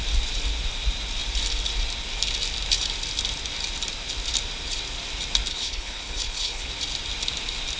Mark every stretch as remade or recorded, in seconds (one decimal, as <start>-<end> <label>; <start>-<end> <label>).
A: 0.0-5.5 recorded; 5.5-6.7 remade; 6.7-7.8 recorded